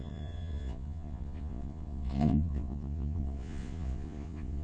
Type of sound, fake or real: fake